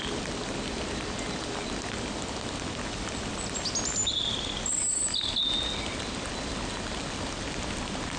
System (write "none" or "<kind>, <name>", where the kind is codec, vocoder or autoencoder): none